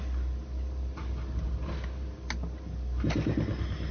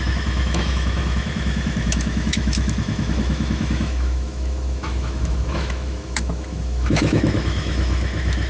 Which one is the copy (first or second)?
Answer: second